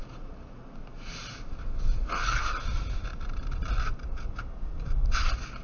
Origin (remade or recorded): recorded